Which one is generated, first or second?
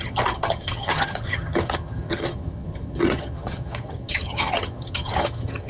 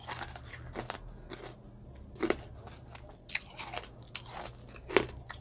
first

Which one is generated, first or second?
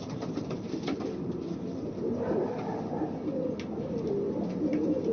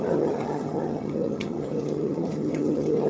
second